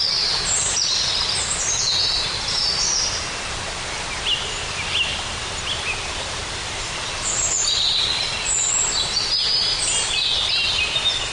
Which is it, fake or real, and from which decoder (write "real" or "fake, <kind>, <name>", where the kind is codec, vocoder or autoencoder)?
real